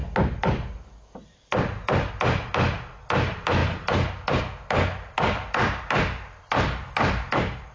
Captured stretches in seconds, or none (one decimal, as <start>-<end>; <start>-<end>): 0.0-7.7